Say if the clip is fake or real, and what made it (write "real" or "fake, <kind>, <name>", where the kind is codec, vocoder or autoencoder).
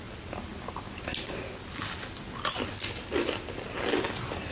real